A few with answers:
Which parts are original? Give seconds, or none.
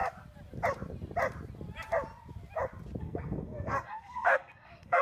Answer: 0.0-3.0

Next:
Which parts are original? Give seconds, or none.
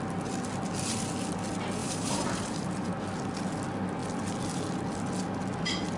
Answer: 0.0-1.8; 2.9-6.0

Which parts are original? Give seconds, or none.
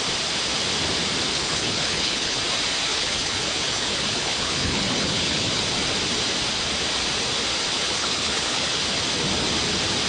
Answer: 0.0-1.3; 2.4-2.9; 5.6-7.7; 8.8-10.1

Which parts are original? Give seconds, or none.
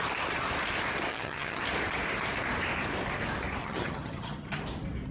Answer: 0.0-1.1; 1.6-3.6; 4.6-5.1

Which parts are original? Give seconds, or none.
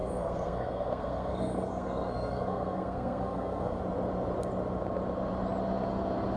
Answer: 3.8-6.4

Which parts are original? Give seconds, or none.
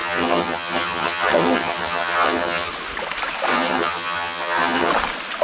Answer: 2.7-3.5; 4.9-5.4